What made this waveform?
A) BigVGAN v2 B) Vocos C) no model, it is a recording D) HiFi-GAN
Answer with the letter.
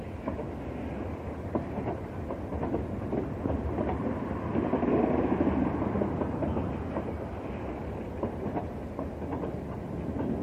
C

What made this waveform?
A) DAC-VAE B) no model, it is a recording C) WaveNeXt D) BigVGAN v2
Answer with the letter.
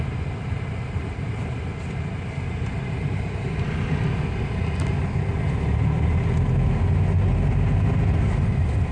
B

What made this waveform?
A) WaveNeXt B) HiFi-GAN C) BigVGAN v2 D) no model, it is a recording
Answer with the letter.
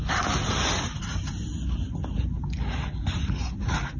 D